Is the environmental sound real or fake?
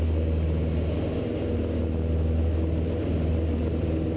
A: real